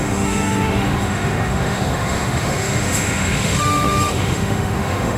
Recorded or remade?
remade